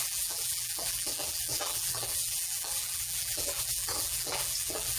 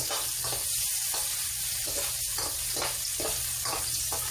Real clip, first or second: second